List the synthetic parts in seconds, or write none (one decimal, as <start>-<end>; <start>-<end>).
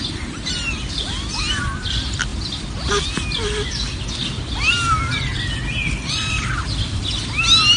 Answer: none